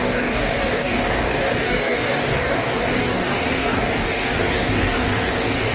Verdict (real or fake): fake